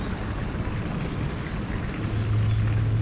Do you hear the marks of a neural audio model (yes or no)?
no